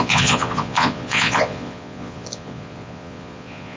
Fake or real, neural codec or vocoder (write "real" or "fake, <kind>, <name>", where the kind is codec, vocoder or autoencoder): fake, vocoder, Vocos